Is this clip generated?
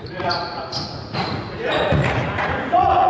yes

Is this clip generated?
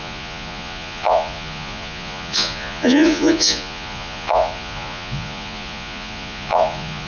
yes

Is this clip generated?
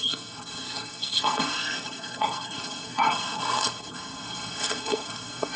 yes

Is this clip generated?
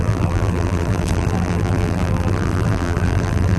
yes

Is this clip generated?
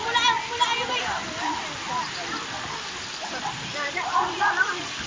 no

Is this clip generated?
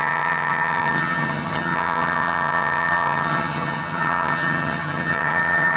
yes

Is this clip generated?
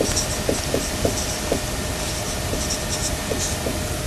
no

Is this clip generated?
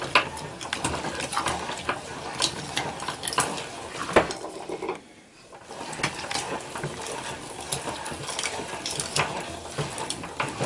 no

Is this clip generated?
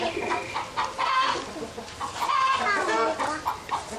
no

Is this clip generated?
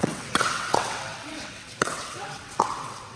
yes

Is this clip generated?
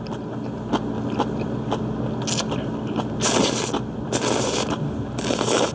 no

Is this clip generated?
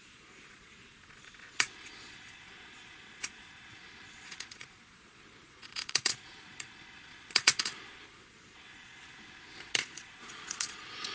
yes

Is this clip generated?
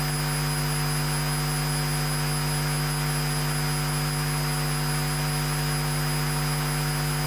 no